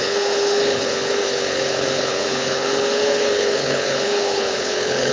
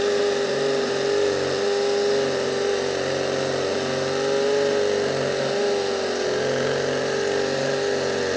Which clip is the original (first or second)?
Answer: second